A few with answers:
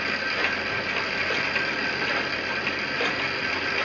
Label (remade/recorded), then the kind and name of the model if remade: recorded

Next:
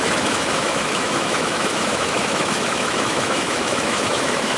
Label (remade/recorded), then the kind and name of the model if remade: remade, autoencoder, DAC-VAE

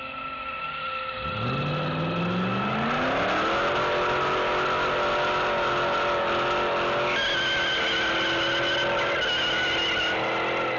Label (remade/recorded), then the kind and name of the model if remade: recorded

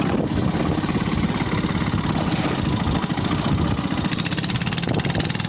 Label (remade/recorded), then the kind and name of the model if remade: recorded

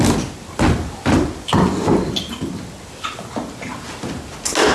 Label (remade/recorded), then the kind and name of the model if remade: recorded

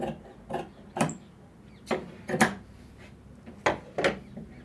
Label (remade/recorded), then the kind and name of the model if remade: recorded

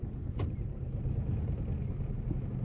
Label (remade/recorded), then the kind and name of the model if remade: recorded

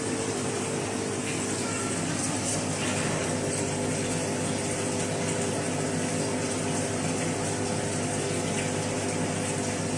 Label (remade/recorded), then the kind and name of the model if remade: recorded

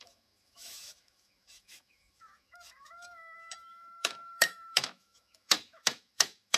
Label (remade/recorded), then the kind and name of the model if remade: remade, autoencoder, DAC-VAE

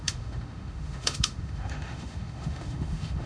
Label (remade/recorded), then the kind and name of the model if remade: remade, autoencoder, DAC-VAE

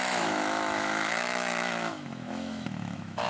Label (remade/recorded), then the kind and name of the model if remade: remade, autoencoder, DAC-VAE